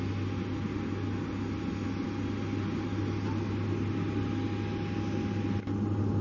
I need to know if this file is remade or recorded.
recorded